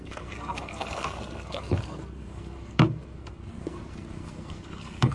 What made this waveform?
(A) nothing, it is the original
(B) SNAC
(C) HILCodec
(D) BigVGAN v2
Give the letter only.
B